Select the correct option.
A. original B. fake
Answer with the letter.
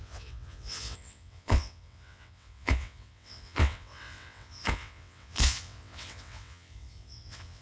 B